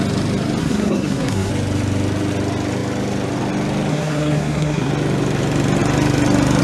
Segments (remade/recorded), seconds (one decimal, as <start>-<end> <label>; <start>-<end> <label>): 0.0-0.6 recorded; 0.6-1.5 remade; 1.5-3.9 recorded; 3.9-4.9 remade; 4.9-6.6 recorded